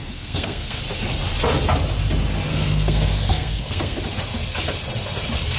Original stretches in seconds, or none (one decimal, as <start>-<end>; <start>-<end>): 0.8-2.5; 4.0-5.6